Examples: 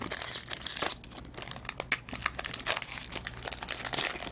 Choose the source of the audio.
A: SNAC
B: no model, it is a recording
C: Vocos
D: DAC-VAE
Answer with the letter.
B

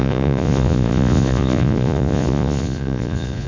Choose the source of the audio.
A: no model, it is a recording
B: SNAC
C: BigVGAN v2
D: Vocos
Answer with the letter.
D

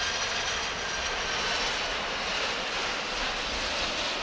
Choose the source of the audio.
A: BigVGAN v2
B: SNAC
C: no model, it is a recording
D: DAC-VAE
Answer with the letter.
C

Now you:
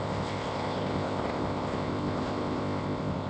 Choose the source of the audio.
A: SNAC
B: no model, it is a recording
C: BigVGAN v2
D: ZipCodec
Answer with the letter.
D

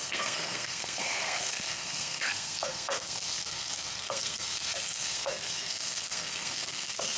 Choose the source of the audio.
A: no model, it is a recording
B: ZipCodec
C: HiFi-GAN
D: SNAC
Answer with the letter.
D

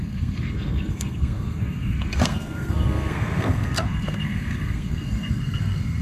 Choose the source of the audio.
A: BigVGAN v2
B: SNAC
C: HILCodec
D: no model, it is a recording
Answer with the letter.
B